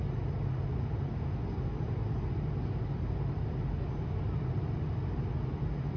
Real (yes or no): yes